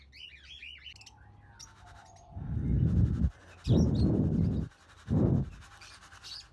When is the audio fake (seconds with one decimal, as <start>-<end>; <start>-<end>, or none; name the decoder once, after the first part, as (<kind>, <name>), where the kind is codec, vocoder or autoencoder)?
none